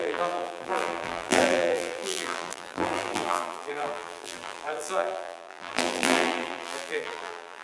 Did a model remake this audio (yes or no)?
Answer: yes